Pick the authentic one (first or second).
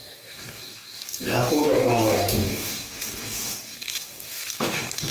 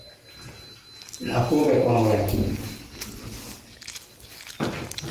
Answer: second